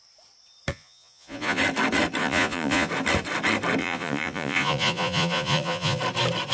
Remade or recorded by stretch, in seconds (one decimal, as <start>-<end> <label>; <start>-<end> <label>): 0.0-0.7 recorded; 0.7-1.6 remade; 1.6-2.2 recorded; 2.2-2.9 remade; 2.9-3.8 recorded; 3.8-6.0 remade; 6.0-6.5 recorded